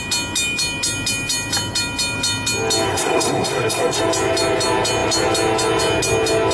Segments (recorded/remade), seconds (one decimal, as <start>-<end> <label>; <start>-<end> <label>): 0.0-2.9 recorded; 2.9-4.0 remade; 4.0-6.5 recorded